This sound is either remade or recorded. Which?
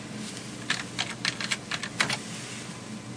recorded